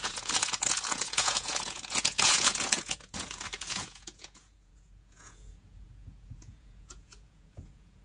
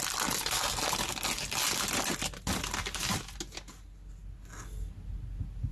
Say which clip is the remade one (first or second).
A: first